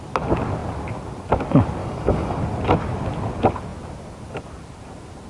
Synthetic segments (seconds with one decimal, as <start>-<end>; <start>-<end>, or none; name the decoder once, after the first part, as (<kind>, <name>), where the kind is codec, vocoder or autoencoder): 1.8-2.4 (codec, DAC)